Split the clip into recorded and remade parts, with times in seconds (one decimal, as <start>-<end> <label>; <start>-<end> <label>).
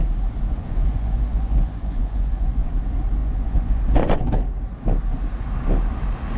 0.0-0.5 recorded; 0.5-2.7 remade; 2.7-3.2 recorded; 3.2-4.3 remade; 4.3-6.4 recorded